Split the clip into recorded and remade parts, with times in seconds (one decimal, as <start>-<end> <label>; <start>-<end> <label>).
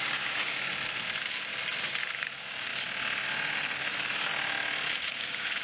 0.0-0.7 remade; 0.7-2.1 recorded; 2.1-2.7 remade; 2.7-3.9 recorded; 3.9-4.3 remade; 4.3-5.1 recorded; 5.1-5.6 remade